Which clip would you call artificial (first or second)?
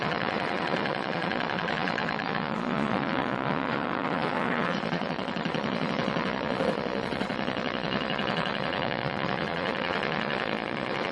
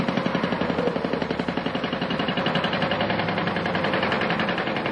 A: first